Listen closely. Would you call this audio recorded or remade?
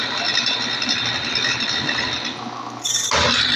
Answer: recorded